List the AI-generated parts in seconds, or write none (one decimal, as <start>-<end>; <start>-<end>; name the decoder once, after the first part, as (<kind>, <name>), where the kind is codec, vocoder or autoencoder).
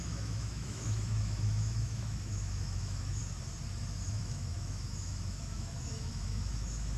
0.0-3.2 (autoencoder, DAC-VAE); 4.1-7.0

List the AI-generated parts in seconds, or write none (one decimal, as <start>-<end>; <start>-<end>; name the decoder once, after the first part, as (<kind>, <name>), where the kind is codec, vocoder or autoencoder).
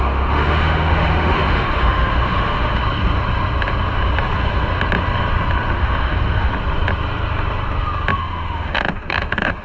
0.0-2.8 (autoencoder, DAC-VAE); 5.7-6.5; 8.2-9.6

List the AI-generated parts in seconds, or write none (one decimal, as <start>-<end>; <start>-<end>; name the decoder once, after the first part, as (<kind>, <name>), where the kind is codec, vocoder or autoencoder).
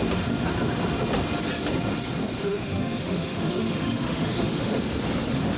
2.4-4.8 (autoencoder, DAC-VAE)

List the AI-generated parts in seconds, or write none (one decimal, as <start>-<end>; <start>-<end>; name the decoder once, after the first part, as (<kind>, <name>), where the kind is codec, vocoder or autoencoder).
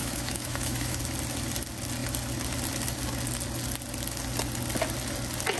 0.0-1.0 (autoencoder, DAC-VAE)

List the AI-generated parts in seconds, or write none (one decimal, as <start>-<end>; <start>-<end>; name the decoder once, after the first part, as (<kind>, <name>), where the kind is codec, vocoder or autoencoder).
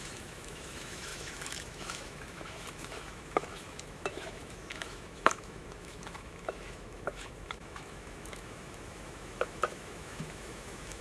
0.0-11.0 (autoencoder, DAC-VAE)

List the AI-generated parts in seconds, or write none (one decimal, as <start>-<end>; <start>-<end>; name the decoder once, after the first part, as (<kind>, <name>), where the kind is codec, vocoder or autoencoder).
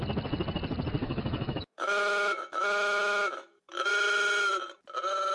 1.0-3.9 (autoencoder, DAC-VAE)